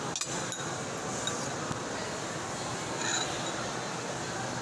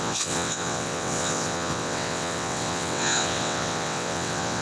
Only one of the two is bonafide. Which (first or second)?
first